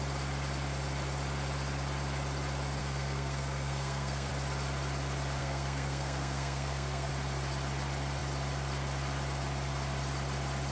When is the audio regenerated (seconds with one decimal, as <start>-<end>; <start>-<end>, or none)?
2.8-4.3; 5.4-7.1